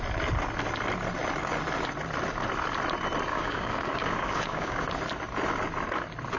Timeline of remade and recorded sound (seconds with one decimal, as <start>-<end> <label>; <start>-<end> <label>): 0.0-3.3 recorded; 3.3-4.9 remade; 4.9-6.4 recorded